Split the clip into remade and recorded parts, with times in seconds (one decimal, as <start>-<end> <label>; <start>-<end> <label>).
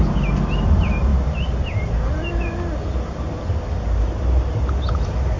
0.0-5.4 recorded